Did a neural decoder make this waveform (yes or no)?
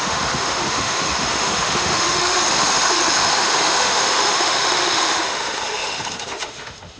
yes